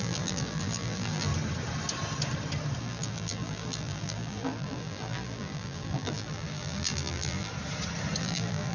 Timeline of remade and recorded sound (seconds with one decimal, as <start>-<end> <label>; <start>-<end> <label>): 0.0-1.3 remade; 1.3-2.8 recorded; 2.8-7.5 remade; 7.5-8.2 recorded; 8.2-8.7 remade

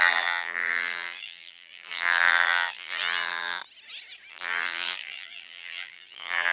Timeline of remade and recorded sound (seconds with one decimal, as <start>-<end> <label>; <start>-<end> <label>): 0.0-3.6 remade; 3.6-4.3 recorded; 4.3-6.5 remade

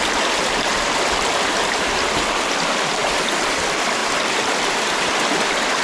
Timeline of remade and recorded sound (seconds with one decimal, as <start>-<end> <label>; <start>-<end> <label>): 0.0-4.0 remade; 4.0-4.9 recorded; 4.9-5.8 remade

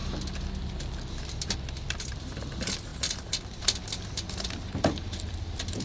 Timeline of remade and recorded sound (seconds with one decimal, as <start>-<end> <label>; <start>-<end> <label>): 0.0-1.9 recorded; 1.9-5.8 remade

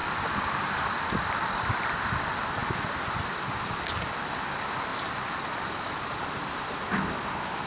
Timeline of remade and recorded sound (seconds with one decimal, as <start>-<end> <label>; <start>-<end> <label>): 0.0-4.9 recorded; 4.9-6.9 remade; 6.9-7.7 recorded

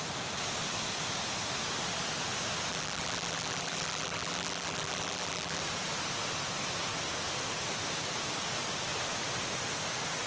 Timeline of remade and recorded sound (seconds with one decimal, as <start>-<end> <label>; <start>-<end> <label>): 0.0-2.7 recorded; 2.7-5.6 remade; 5.6-10.3 recorded

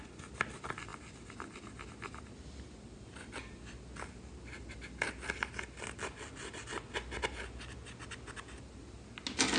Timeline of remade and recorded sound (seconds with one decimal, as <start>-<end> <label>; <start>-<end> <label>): 0.0-9.6 recorded